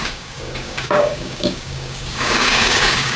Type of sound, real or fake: fake